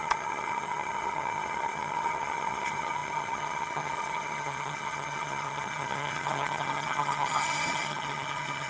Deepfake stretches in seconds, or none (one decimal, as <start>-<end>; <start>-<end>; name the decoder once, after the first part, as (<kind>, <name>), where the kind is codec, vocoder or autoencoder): 0.0-8.7 (vocoder, HiFi-GAN)